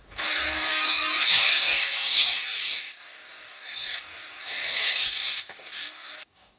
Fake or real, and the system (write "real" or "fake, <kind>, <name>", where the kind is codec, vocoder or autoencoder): fake, codec, DAC